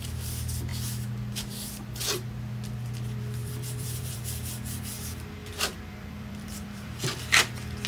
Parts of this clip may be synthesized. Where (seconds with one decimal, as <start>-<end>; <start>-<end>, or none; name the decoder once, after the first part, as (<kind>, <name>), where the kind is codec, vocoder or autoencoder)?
3.4-4.9 (vocoder, BigVGAN v2); 5.4-7.0